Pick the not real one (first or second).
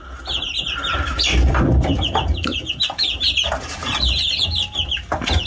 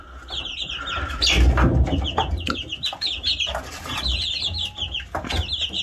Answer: first